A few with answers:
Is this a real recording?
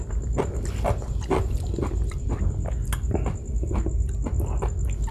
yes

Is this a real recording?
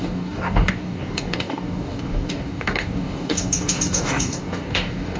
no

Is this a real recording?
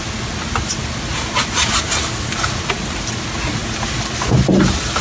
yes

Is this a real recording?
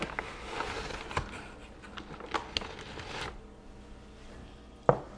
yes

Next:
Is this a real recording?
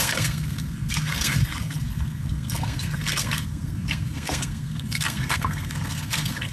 no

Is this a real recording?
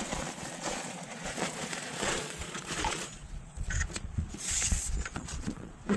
no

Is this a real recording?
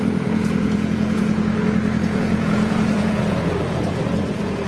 no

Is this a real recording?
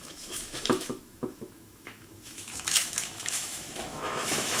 no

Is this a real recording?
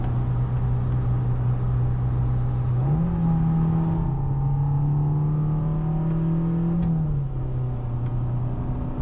yes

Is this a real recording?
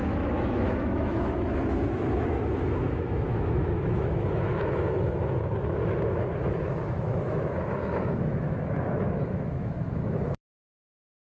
no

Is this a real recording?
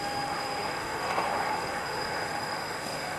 no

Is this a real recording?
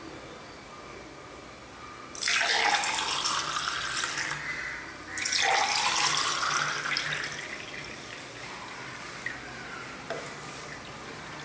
yes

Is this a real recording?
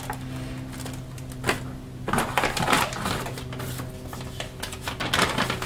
yes